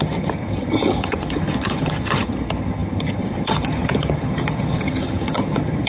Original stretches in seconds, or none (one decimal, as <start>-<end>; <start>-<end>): none